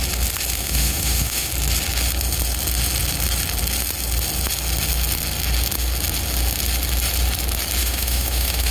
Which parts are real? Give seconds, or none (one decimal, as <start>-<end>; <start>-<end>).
0.0-0.6; 1.5-7.8

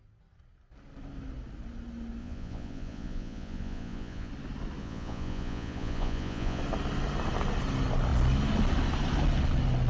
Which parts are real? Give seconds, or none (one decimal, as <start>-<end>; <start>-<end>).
0.0-2.2; 4.3-4.8; 6.6-9.9

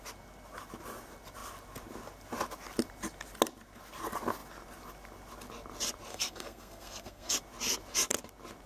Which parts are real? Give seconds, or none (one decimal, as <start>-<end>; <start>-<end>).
0.0-6.1; 7.4-8.7

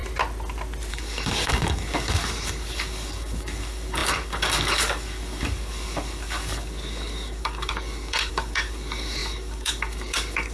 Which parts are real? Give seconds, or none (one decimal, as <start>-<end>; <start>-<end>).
0.0-0.9

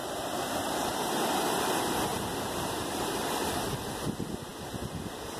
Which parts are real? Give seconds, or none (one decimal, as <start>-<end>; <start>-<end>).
1.1-2.1; 3.4-5.4